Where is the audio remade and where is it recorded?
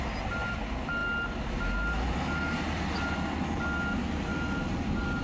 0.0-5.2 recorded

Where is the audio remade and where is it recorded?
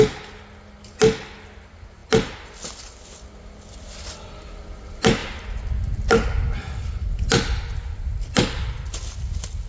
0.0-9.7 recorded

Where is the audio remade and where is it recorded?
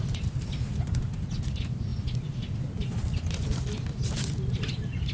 0.0-5.1 recorded